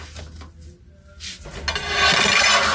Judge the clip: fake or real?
real